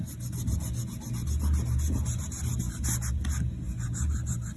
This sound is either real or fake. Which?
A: real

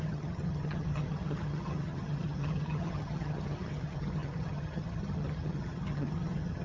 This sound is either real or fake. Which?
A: fake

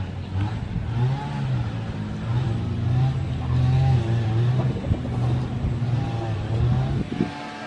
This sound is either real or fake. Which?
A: real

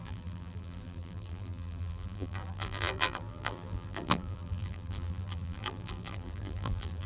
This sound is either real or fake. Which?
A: fake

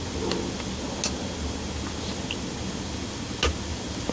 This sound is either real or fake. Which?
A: real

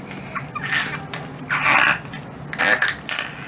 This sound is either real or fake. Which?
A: real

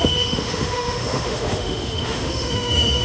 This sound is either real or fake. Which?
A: fake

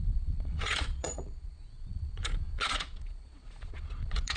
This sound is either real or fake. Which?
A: fake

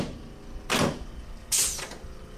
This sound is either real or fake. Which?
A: real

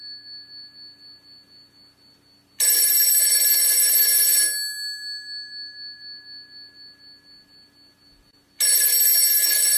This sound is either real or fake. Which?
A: real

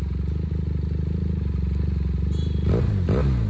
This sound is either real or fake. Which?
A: real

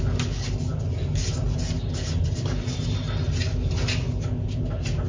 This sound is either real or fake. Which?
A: real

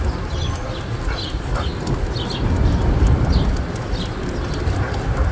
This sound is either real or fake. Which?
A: real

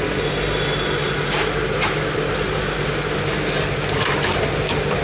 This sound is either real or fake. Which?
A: real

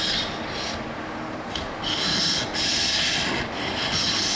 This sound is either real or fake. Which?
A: real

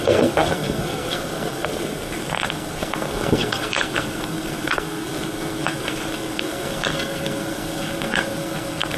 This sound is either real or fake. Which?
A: fake